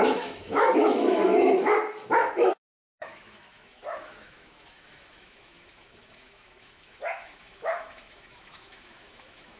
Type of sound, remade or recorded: remade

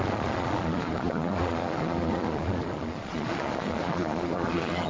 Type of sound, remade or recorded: remade